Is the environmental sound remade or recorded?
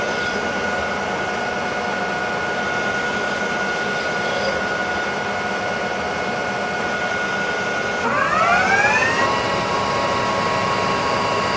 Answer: recorded